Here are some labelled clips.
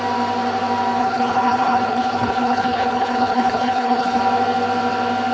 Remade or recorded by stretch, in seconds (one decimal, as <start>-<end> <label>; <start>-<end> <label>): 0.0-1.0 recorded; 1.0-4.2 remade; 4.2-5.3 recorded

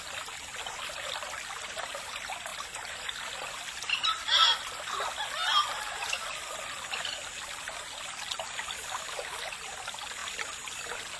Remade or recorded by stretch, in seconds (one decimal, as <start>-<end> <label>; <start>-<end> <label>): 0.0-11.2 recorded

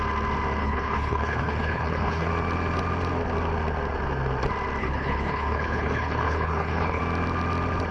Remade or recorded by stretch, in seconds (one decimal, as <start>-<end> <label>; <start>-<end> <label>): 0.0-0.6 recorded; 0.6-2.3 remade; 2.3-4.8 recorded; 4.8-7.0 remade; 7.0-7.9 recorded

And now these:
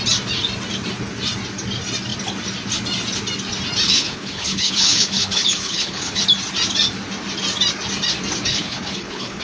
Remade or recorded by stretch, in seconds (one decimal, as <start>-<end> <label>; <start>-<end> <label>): 0.0-3.9 recorded; 3.9-6.2 remade; 6.2-8.5 recorded; 8.5-9.4 remade